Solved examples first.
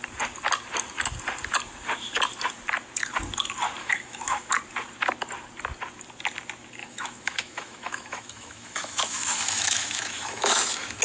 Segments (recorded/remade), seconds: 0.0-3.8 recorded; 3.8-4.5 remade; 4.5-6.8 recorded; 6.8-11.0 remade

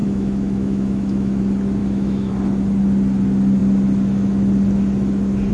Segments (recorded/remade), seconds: 0.0-1.4 remade; 1.4-1.8 recorded; 1.8-2.3 remade; 2.3-5.5 recorded

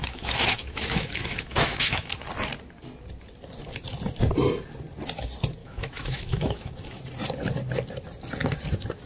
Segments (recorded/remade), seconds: 0.0-2.1 remade; 2.1-5.6 recorded; 5.6-7.0 remade; 7.0-9.1 recorded

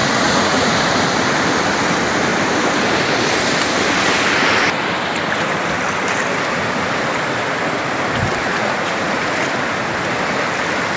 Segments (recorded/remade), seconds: 0.0-0.7 remade; 0.7-8.5 recorded; 8.5-9.3 remade; 9.3-11.0 recorded